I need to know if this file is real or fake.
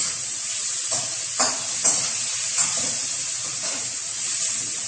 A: fake